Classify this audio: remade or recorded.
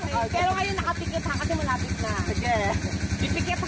recorded